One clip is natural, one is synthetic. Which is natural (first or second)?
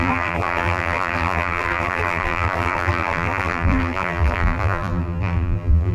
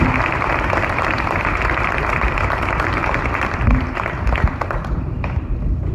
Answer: second